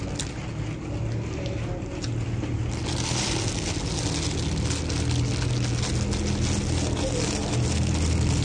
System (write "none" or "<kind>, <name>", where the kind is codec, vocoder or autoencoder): none